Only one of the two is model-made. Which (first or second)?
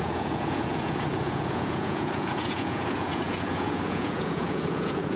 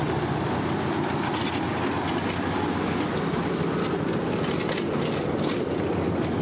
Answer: first